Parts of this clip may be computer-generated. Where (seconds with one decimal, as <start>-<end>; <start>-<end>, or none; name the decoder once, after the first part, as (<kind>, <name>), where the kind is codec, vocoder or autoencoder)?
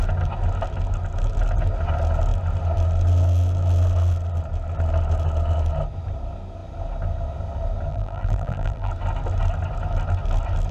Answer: 7.9-8.9 (vocoder, BigVGAN v2)